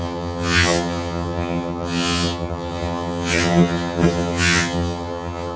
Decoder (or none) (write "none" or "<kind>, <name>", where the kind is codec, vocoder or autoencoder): vocoder, HiFi-GAN